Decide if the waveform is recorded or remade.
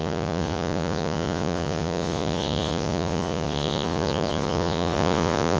remade